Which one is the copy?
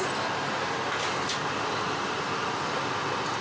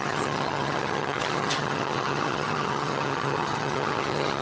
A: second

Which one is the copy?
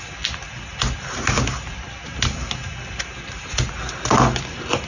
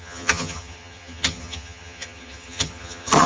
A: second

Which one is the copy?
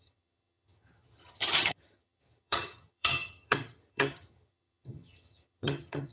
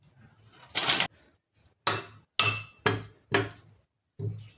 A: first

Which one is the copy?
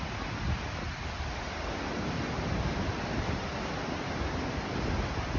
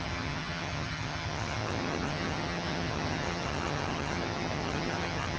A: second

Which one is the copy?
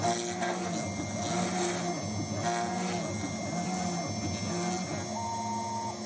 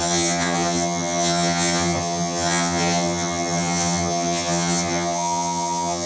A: second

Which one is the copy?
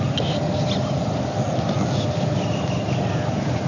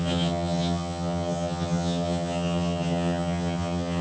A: second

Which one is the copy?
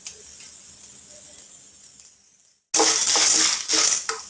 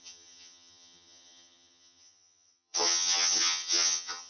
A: second